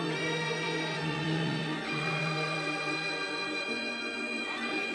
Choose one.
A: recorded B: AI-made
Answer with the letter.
B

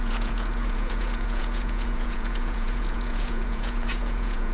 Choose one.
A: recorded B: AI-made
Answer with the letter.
B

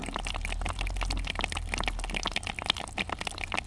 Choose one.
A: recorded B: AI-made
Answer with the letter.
A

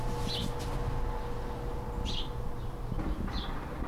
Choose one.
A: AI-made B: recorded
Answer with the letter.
B